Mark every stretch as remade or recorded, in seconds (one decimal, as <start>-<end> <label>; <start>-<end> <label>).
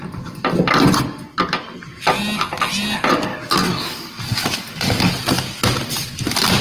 0.0-3.3 recorded; 3.3-5.1 remade; 5.1-6.6 recorded